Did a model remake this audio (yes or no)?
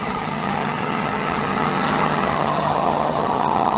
yes